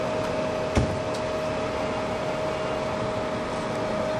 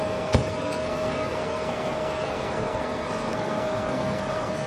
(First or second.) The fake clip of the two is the second